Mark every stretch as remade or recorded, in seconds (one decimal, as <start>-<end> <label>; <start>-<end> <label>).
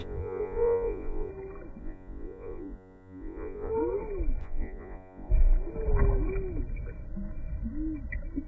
0.0-1.3 remade; 1.3-1.8 recorded; 1.8-3.7 remade; 3.7-4.4 recorded; 4.4-5.3 remade; 5.3-8.5 recorded